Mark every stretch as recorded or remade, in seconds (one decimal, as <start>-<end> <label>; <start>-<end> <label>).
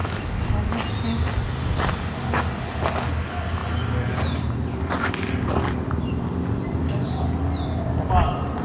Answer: 0.0-8.6 recorded